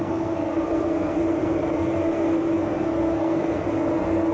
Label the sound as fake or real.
fake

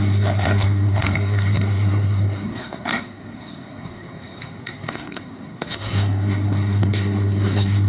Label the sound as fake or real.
fake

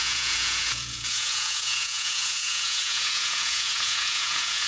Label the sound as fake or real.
fake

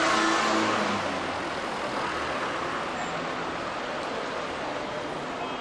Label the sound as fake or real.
real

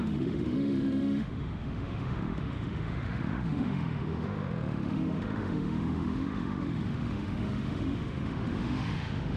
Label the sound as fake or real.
fake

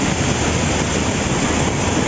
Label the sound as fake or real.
real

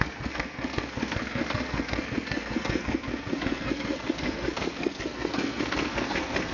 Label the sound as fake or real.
fake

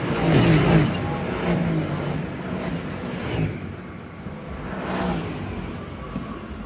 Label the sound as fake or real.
real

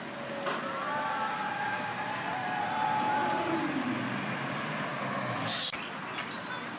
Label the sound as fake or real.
real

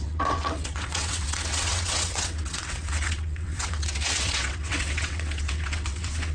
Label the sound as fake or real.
fake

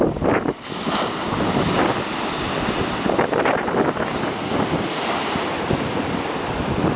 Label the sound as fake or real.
real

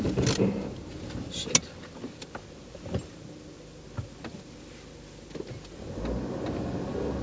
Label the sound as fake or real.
real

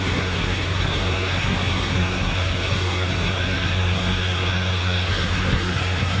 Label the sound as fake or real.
fake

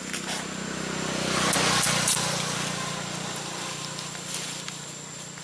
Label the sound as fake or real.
real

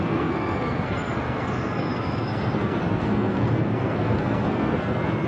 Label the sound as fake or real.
fake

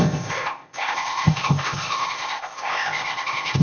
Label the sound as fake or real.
fake